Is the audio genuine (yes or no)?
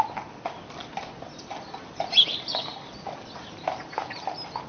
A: yes